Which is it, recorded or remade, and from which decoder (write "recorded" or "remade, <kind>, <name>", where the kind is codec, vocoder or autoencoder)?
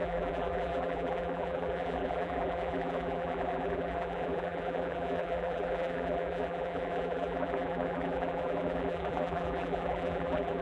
remade, vocoder, BigVGAN v2